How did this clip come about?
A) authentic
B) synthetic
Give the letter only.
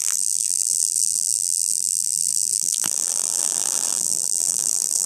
B